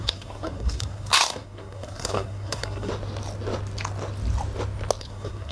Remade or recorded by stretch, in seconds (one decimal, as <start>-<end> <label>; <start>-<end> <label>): 0.0-2.9 remade; 2.9-5.0 recorded; 5.0-5.5 remade